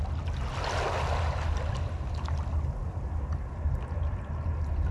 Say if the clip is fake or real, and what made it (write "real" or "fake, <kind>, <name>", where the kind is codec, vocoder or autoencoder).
real